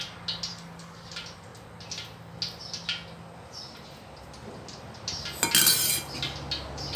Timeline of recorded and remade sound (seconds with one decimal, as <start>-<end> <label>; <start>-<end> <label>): 0.0-0.5 recorded; 0.5-1.1 remade; 1.1-7.0 recorded